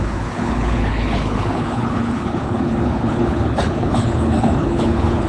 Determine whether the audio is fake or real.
fake